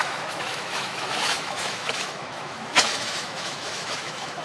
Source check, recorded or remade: remade